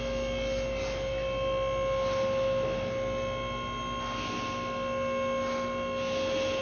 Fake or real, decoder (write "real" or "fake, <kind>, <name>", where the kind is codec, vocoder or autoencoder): real